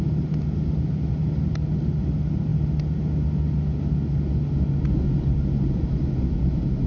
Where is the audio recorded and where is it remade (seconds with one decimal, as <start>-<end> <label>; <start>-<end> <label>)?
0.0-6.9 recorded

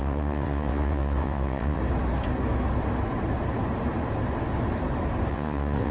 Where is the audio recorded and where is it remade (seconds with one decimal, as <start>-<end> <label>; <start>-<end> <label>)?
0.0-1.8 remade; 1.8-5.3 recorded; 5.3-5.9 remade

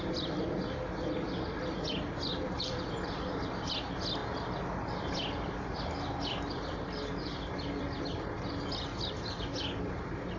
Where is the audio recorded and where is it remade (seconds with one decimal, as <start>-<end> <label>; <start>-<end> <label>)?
0.0-2.3 recorded; 2.3-3.8 remade; 3.8-8.9 recorded; 8.9-9.4 remade; 9.4-10.4 recorded